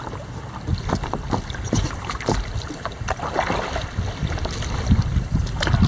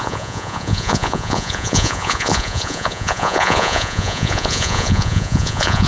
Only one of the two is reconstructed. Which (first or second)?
second